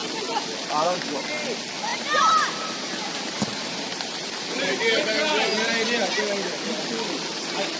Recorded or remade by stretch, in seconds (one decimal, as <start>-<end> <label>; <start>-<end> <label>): 0.0-1.9 recorded; 1.9-4.8 remade; 4.8-7.8 recorded